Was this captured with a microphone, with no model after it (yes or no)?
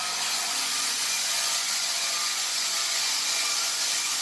no